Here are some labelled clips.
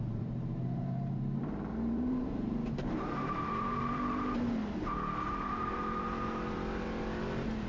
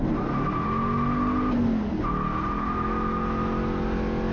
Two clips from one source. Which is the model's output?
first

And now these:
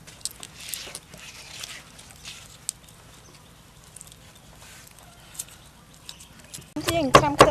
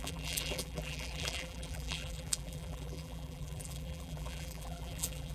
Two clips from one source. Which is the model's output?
second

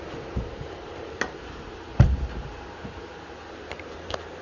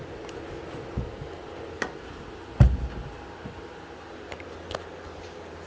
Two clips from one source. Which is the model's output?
first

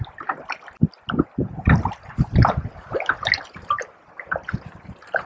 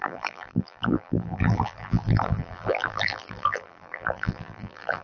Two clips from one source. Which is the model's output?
second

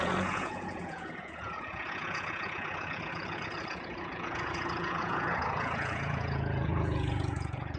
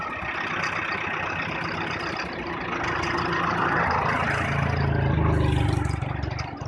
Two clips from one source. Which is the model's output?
first